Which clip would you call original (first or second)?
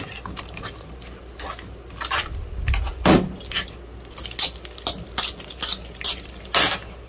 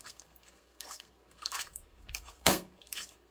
first